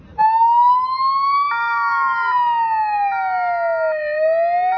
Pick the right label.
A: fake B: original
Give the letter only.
B